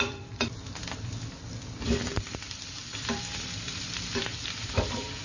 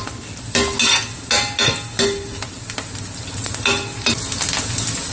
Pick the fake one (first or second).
first